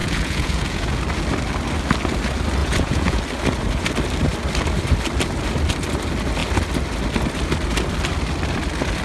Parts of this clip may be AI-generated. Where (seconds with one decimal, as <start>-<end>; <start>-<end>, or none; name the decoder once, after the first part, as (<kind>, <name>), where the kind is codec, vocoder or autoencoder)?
0.0-1.0 (vocoder, Vocos); 2.6-3.2